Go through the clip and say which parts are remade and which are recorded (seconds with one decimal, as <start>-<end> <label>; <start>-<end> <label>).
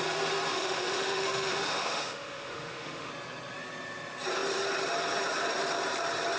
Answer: 0.0-0.5 recorded; 0.5-3.1 remade; 3.1-6.4 recorded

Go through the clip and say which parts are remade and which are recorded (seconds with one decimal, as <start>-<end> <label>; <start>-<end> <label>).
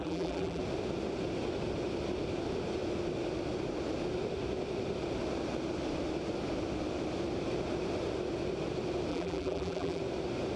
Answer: 0.0-0.6 remade; 0.6-9.1 recorded; 9.1-10.0 remade; 10.0-10.6 recorded